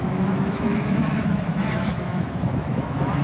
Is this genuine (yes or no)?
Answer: no